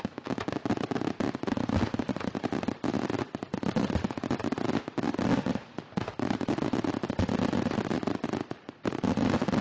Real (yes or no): yes